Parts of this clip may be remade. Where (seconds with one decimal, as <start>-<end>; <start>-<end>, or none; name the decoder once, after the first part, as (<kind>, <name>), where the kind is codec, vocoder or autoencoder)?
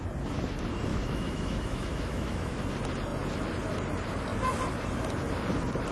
0.9-2.6 (autoencoder, DAC-VAE)